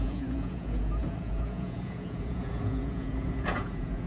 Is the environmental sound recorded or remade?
remade